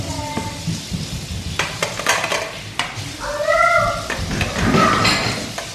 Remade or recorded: recorded